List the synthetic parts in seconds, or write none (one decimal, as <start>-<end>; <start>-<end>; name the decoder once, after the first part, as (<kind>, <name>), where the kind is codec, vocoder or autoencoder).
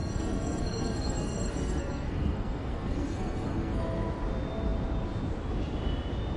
0.0-3.8 (codec, SNAC)